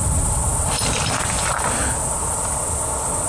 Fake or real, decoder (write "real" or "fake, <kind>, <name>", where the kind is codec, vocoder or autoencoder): fake, vocoder, BigVGAN v2